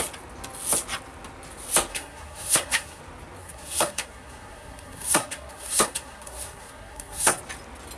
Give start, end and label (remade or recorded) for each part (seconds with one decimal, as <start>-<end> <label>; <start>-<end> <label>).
0.0-1.9 recorded; 1.9-3.0 remade; 3.0-3.4 recorded; 3.4-7.4 remade; 7.4-8.0 recorded